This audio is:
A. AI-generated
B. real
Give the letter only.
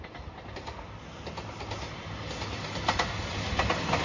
B